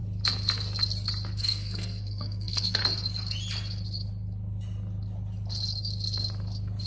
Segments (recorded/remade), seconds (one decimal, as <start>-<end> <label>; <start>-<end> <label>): 0.0-1.4 recorded; 1.4-2.8 remade; 2.8-6.9 recorded